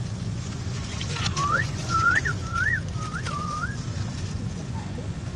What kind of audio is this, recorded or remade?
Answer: remade